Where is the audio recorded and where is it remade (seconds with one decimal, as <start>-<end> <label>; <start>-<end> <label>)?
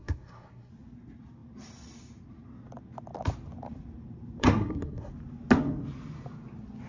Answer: 0.0-0.7 remade; 0.7-4.4 recorded; 4.4-5.1 remade; 5.1-6.9 recorded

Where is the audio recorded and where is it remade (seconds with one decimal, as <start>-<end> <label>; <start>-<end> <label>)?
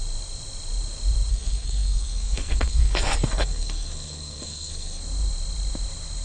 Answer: 0.0-1.3 recorded; 1.3-5.0 remade; 5.0-6.2 recorded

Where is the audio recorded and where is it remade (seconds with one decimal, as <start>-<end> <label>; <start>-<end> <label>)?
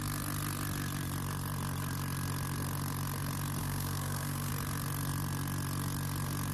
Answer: 0.0-3.6 recorded; 3.6-4.5 remade; 4.5-6.5 recorded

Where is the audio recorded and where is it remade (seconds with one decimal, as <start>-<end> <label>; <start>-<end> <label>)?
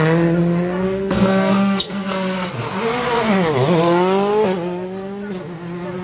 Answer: 0.0-0.8 recorded; 0.8-2.5 remade; 2.5-6.0 recorded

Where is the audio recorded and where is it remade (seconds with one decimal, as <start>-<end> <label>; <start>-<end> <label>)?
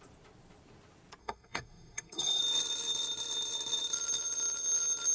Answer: 0.0-1.2 recorded; 1.2-2.4 remade; 2.4-5.1 recorded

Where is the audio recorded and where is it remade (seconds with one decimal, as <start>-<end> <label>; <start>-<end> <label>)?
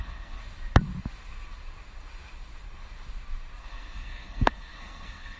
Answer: 0.0-0.4 remade; 0.4-3.6 recorded; 3.6-5.4 remade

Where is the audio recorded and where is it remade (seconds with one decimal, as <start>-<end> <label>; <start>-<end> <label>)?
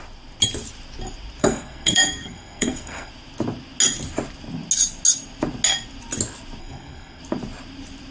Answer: 0.0-1.4 recorded; 1.4-3.1 remade; 3.1-6.6 recorded; 6.6-7.2 remade; 7.2-8.1 recorded